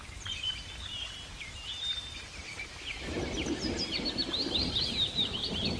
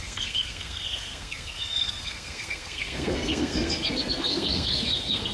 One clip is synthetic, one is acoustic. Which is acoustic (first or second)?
first